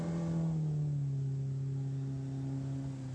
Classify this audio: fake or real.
real